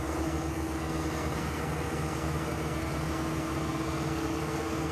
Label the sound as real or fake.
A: fake